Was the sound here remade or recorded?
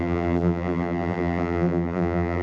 remade